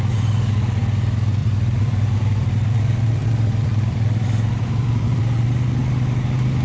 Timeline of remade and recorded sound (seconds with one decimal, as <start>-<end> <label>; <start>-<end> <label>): 0.0-1.4 recorded; 1.4-5.2 remade; 5.2-6.6 recorded